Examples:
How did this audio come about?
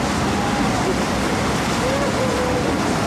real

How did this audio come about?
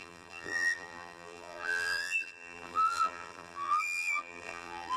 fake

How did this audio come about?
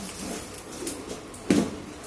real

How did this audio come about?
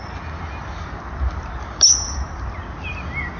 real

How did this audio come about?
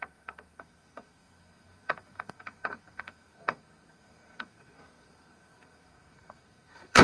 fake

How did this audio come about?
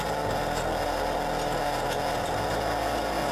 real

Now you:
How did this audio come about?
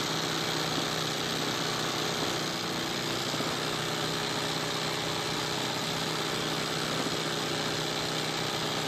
real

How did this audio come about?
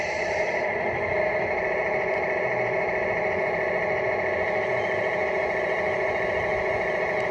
real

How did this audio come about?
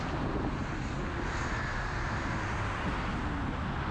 real